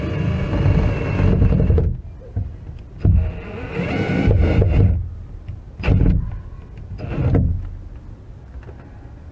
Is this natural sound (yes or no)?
yes